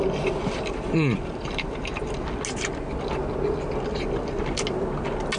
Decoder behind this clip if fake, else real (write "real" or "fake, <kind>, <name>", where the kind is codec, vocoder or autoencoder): real